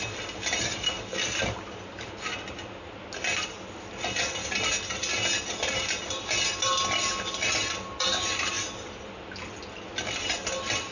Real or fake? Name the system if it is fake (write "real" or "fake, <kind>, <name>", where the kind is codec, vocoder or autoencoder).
real